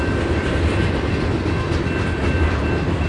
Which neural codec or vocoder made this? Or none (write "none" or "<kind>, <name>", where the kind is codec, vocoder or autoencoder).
none